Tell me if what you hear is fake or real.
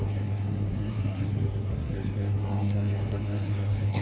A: fake